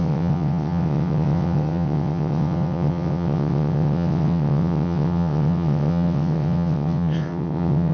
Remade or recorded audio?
remade